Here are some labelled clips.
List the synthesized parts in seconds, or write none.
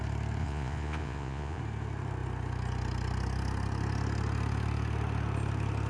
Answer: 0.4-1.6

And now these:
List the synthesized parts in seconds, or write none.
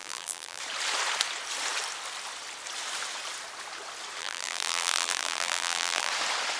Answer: 0.0-0.6; 4.2-6.1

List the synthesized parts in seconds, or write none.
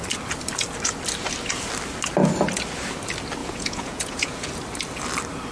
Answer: 3.4-4.5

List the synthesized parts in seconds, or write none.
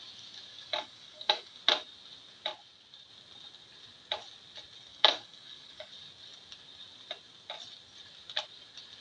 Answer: 0.5-1.6; 4.9-5.9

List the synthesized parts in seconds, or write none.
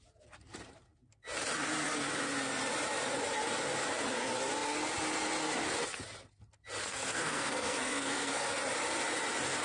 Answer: 6.8-8.5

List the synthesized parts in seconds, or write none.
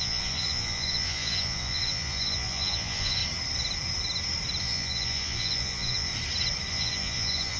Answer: 0.0-3.2; 4.6-6.1; 6.7-7.6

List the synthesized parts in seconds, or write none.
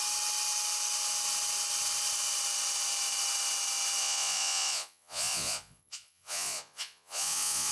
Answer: 4.0-7.7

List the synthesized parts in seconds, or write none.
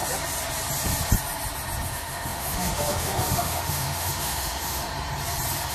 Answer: 1.9-4.9